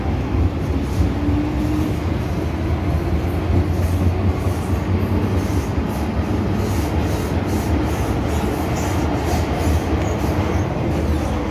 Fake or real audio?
real